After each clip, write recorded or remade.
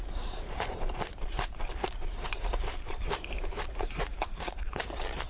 remade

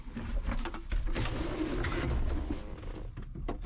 recorded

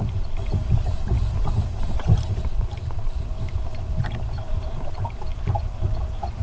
remade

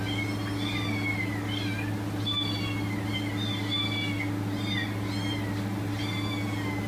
recorded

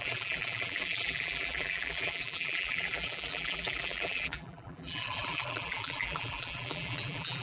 remade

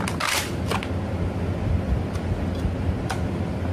recorded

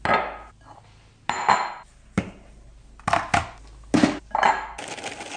recorded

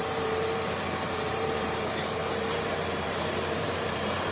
remade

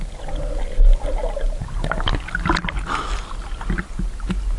recorded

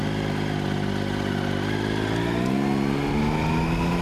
recorded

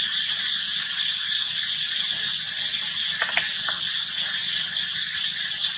recorded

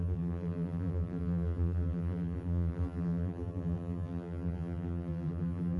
remade